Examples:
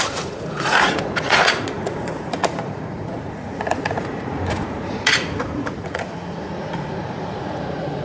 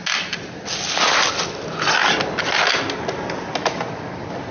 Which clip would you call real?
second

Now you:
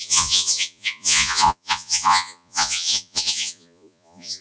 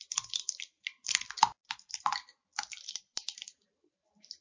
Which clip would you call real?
second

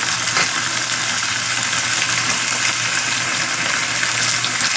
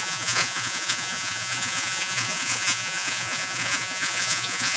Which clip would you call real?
first